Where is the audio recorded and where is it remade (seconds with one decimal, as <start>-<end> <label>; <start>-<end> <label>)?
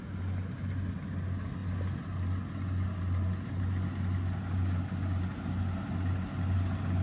0.0-7.0 recorded